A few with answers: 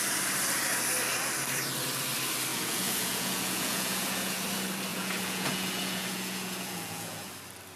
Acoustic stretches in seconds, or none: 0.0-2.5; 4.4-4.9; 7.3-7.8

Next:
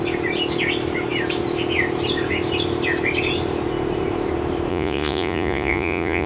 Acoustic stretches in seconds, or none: 0.0-4.7

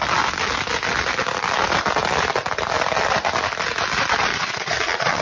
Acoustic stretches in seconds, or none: 0.0-4.3

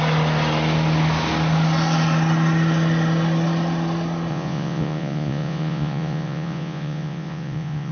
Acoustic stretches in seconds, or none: 0.0-4.3

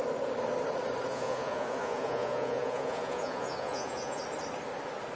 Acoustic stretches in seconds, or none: 0.0-1.1; 4.2-5.2

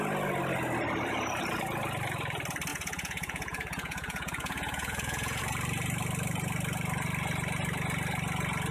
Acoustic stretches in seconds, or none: 0.0-2.7; 5.4-8.7

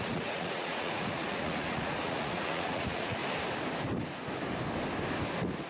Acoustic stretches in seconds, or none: 3.2-5.7